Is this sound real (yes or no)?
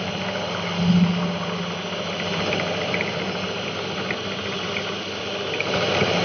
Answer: yes